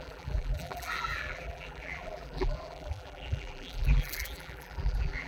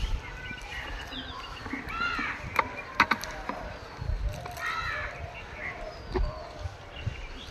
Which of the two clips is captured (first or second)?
second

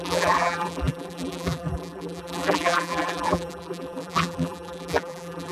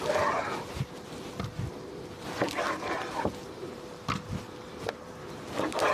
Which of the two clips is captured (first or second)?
second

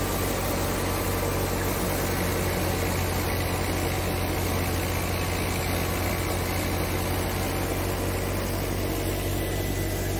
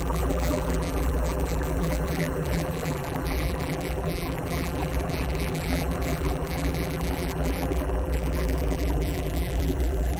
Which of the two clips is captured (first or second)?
first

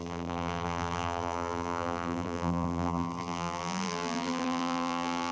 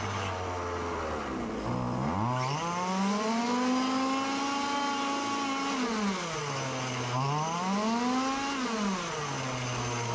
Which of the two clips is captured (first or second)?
second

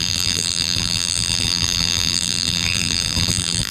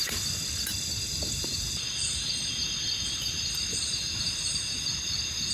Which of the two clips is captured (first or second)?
second